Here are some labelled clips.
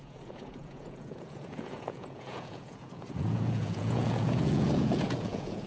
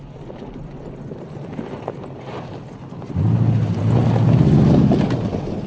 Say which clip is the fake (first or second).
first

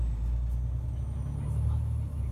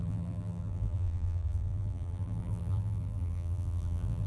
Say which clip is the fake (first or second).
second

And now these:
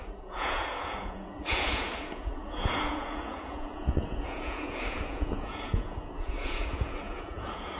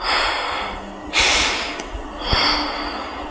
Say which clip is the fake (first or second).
first